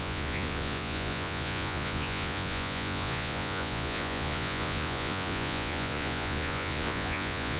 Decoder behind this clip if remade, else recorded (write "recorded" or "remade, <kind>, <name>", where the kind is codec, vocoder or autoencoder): remade, vocoder, Vocos